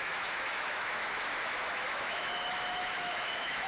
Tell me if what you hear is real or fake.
fake